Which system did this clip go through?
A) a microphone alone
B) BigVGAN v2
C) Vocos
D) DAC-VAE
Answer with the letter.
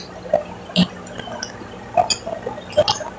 A